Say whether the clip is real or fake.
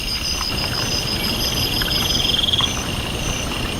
fake